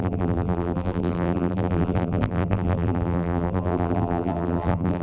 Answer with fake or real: fake